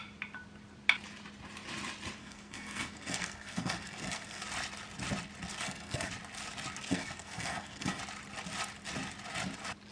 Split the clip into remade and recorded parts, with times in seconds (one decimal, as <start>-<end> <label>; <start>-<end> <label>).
0.0-2.2 recorded; 2.2-4.4 remade; 4.4-5.5 recorded; 5.5-6.1 remade; 6.1-6.9 recorded; 6.9-8.0 remade; 8.0-9.9 recorded